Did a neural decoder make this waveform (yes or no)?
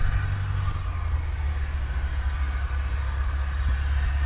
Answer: no